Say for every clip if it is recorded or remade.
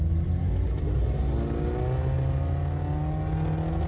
recorded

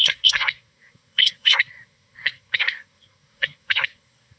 remade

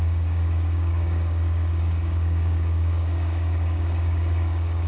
remade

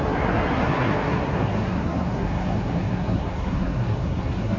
remade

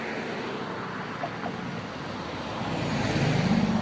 recorded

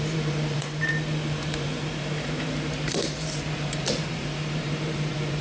remade